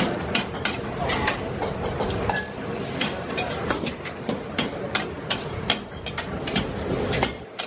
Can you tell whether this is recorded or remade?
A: remade